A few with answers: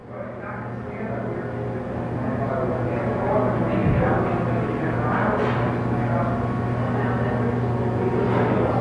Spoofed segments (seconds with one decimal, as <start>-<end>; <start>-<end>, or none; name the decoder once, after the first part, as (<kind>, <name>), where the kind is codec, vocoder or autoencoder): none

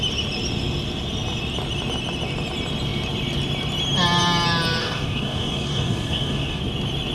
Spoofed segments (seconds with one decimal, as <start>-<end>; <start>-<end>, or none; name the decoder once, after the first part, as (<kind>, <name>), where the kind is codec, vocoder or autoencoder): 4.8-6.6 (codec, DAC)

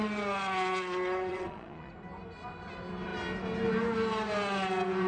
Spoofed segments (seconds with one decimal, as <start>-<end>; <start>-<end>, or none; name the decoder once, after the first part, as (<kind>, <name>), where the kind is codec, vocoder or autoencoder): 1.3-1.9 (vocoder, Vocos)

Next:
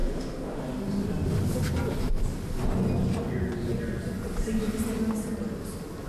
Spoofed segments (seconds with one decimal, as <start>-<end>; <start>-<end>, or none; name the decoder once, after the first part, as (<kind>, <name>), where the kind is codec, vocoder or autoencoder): 0.0-0.6 (autoencoder, DAC-VAE)

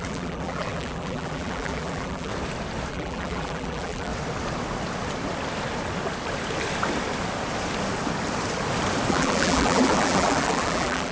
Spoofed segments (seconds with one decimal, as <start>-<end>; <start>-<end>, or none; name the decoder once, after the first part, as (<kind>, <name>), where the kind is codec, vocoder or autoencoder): 0.0-2.3 (vocoder, BigVGAN v2); 2.9-4.1; 9.1-11.1

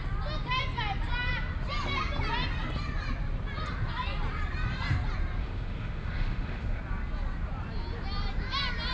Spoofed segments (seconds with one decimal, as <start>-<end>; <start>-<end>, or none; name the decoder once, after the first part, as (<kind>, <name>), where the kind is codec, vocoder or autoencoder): 5.4-6.8 (autoencoder, DAC-VAE)

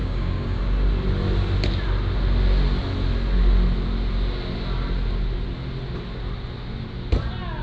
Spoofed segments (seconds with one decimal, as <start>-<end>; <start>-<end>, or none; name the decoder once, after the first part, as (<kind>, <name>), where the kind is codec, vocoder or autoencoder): 0.0-0.6 (codec, DAC)